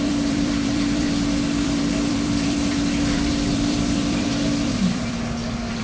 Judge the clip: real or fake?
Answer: fake